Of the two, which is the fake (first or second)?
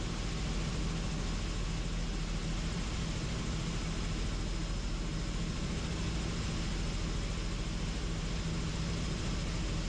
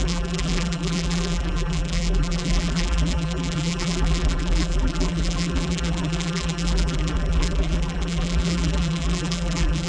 second